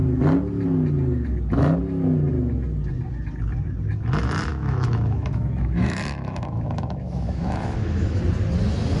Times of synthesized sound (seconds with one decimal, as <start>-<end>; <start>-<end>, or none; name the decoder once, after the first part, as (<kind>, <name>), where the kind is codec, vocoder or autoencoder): 4.5-8.2 (autoencoder, DAC-VAE)